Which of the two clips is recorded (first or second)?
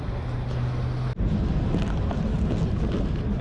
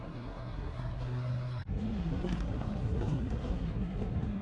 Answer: first